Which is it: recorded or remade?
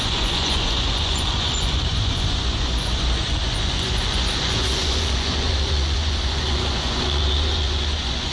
remade